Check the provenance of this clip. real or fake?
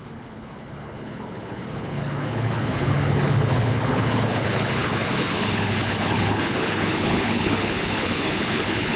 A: fake